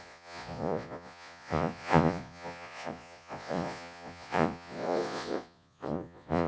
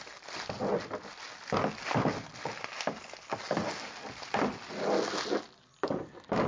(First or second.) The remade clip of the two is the first